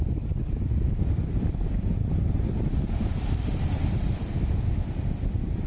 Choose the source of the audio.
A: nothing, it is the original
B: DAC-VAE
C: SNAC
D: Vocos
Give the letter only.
A